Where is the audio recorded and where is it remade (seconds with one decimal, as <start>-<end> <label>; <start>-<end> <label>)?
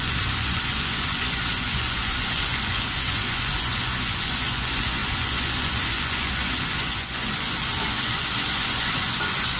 0.0-9.6 remade